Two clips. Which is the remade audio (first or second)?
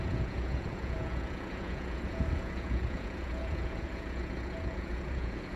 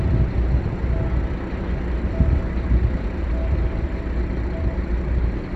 first